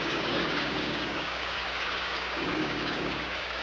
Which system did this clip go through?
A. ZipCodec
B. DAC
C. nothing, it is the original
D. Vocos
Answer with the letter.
B